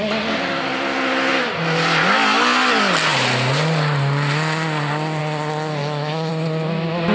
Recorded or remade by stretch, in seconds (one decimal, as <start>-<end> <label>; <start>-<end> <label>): 0.0-5.8 recorded; 5.8-6.3 remade; 6.3-7.1 recorded

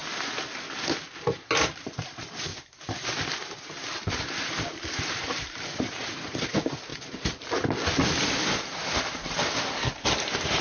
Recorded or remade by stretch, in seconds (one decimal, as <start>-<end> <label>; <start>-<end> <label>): 0.0-1.7 recorded; 1.7-2.5 remade; 2.5-4.6 recorded; 4.6-6.9 remade; 6.9-8.2 recorded; 8.2-10.6 remade

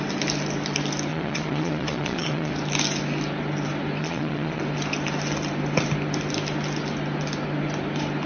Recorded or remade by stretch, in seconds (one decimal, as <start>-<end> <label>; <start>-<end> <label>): 0.0-1.1 recorded; 1.1-2.5 remade; 2.5-4.0 recorded; 4.0-4.6 remade; 4.6-8.3 recorded